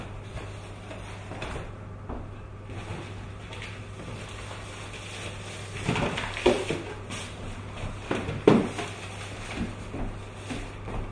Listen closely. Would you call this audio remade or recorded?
recorded